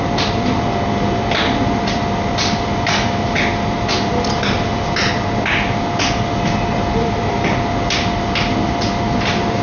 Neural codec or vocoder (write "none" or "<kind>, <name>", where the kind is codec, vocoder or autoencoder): none